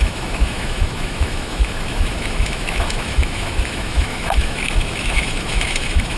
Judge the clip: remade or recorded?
remade